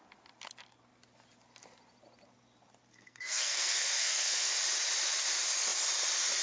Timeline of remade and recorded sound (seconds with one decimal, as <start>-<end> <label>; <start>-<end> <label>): 0.0-2.9 recorded; 2.9-4.5 remade; 4.5-6.4 recorded